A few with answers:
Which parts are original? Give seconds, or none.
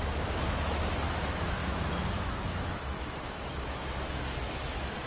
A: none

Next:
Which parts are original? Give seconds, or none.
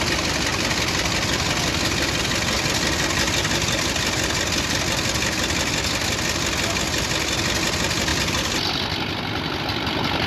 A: 0.0-10.3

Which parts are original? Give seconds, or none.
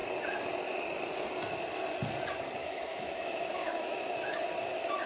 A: 0.0-2.6; 4.4-5.1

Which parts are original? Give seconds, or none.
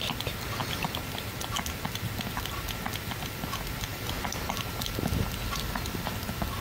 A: 0.0-6.6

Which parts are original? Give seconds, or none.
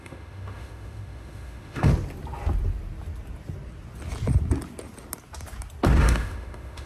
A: 1.9-6.0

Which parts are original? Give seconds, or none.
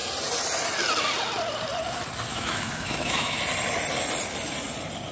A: 0.0-2.3; 3.4-5.1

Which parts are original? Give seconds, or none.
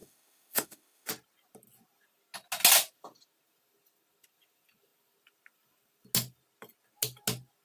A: 1.1-7.6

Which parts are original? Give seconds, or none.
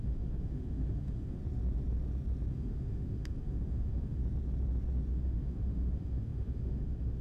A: 1.4-2.5; 4.2-5.1